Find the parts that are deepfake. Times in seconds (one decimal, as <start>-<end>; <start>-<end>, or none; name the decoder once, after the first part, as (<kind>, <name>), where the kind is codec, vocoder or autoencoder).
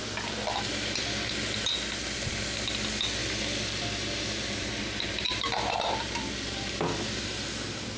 none